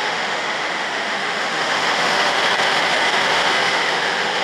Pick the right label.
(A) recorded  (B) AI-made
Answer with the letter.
B